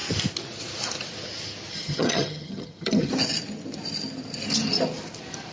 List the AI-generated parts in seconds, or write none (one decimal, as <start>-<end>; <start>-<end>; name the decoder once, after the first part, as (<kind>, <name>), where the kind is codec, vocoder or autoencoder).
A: 1.7-3.1 (vocoder, HiFi-GAN)